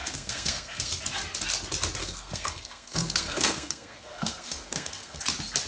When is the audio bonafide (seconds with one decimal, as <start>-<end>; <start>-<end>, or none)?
0.9-2.0; 5.2-5.7

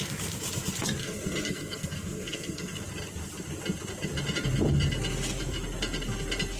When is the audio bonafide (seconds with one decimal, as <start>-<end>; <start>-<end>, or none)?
0.0-1.0; 2.8-6.6

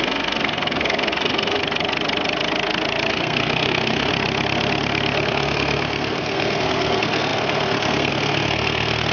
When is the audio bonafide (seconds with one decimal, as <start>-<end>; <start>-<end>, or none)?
1.6-3.1; 4.1-5.3

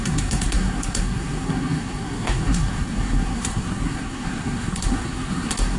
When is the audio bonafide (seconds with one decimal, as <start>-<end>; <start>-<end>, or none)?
none

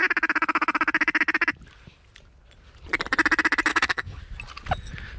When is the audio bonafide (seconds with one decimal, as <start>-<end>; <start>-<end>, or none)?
0.0-3.7; 4.2-5.2

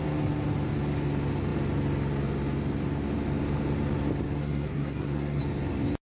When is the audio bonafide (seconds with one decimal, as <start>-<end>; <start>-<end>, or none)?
0.0-4.4; 5.4-6.1

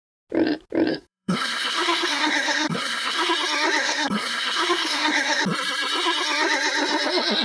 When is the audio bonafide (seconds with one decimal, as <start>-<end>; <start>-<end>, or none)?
0.0-0.9; 3.3-3.8; 5.4-7.4

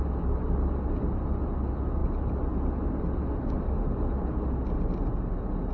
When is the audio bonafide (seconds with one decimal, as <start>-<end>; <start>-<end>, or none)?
0.0-5.7